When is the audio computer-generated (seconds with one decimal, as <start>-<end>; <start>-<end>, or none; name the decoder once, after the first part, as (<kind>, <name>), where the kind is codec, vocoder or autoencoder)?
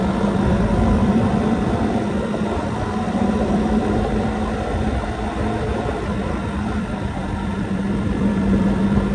0.0-9.1 (vocoder, BigVGAN v2)